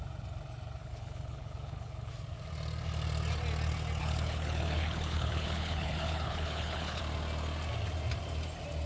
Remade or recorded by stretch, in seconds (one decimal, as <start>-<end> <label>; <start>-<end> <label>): 0.0-0.8 recorded; 0.8-2.1 remade; 2.1-4.0 recorded; 4.0-7.0 remade; 7.0-8.9 recorded